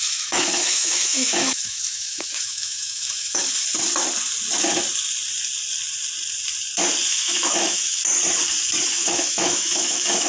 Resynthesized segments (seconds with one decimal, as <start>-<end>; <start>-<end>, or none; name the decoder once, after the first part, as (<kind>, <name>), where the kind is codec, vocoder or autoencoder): 0.0-3.4 (autoencoder, DAC-VAE); 7.1-8.0; 8.9-10.3